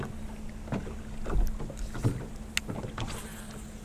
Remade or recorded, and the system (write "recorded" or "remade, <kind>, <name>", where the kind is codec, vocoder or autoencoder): recorded